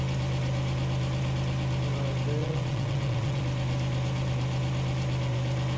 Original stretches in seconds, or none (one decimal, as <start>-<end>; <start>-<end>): 0.0-2.4; 3.4-5.8